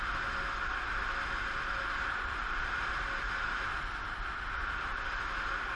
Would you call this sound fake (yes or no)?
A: no